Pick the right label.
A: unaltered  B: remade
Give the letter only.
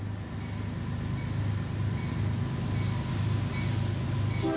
A